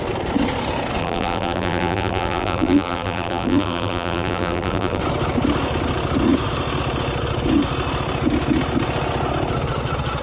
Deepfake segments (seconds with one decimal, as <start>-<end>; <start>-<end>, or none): 1.0-5.0